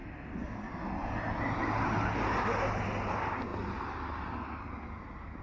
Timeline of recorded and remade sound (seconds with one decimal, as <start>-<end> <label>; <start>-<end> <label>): 0.0-5.4 recorded